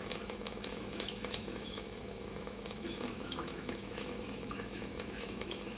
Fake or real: fake